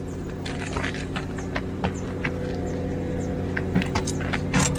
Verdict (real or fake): real